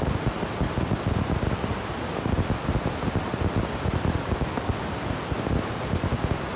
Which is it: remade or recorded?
recorded